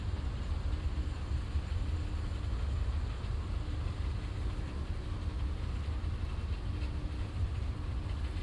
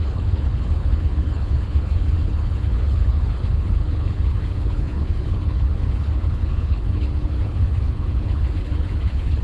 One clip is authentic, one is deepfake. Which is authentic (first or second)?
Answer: first